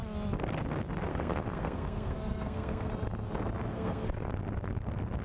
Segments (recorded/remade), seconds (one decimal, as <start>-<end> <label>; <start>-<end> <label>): 0.0-1.1 recorded; 1.1-2.9 remade; 2.9-3.7 recorded; 3.7-4.3 remade; 4.3-5.2 recorded